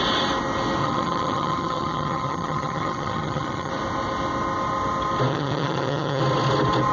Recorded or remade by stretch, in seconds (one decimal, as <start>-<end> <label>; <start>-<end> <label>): 0.0-0.8 recorded; 0.8-3.7 remade; 3.7-5.3 recorded; 5.3-6.2 remade; 6.2-6.9 recorded